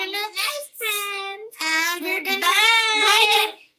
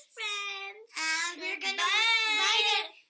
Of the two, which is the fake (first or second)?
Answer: first